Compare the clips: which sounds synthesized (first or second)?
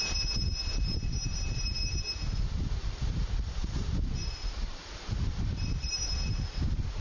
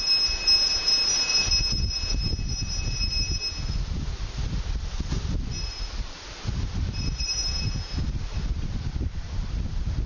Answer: first